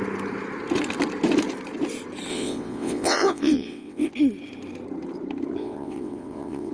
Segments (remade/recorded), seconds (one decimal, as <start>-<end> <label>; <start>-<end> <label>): 0.0-2.3 recorded; 2.3-4.1 remade; 4.1-5.6 recorded; 5.6-6.7 remade